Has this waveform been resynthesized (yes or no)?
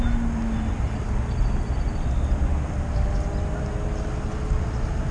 no